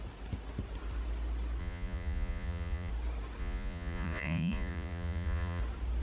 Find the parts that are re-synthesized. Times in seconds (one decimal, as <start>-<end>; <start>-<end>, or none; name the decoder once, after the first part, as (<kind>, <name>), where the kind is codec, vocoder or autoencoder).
1.6-2.9 (vocoder, Vocos); 3.4-5.6